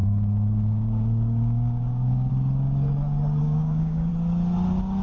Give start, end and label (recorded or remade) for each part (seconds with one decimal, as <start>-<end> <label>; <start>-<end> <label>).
0.0-2.3 remade; 2.3-3.4 recorded; 3.4-4.1 remade; 4.1-5.0 recorded